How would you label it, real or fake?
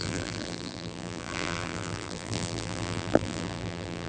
fake